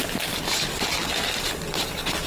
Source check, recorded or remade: recorded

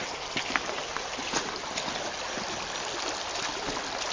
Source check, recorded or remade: recorded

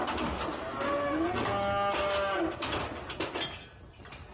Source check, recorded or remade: recorded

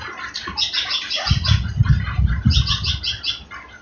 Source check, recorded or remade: recorded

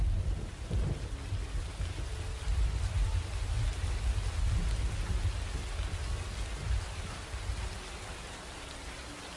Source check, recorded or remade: recorded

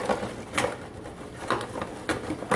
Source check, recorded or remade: recorded